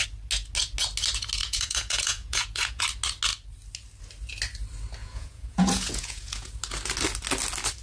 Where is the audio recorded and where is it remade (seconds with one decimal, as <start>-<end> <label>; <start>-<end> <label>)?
0.0-1.4 recorded; 1.4-2.8 remade; 2.8-5.0 recorded; 5.0-6.5 remade; 6.5-7.8 recorded